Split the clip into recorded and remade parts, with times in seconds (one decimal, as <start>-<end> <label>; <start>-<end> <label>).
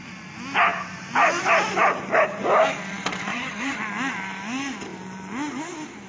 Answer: 0.0-3.3 recorded; 3.3-3.8 remade; 3.8-6.1 recorded